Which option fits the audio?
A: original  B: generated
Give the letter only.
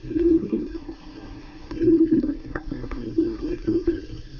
B